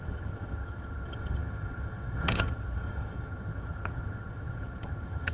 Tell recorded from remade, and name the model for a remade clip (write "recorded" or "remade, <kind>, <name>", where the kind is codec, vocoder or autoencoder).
remade, vocoder, HiFi-GAN